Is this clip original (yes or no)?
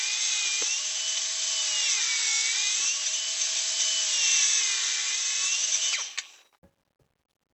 yes